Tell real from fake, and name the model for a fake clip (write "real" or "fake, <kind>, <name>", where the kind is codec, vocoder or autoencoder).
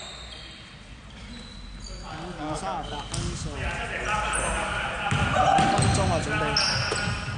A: real